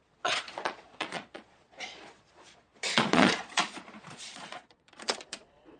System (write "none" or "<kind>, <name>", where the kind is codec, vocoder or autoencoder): vocoder, Vocos